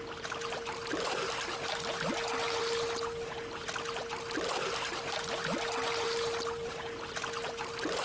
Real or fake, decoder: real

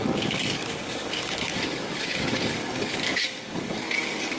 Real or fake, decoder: fake, codec, DAC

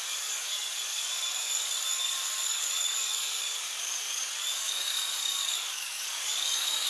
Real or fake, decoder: fake, codec, DAC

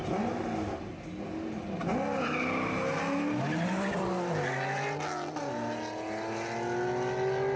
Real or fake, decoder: real